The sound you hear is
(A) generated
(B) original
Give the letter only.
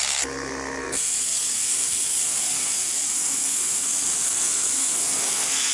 A